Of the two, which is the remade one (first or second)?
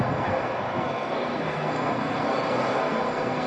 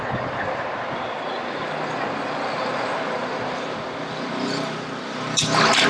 first